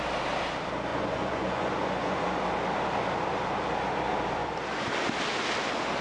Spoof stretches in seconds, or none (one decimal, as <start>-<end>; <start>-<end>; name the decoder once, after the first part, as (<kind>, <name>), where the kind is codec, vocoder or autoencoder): 0.9-2.4 (vocoder, Vocos)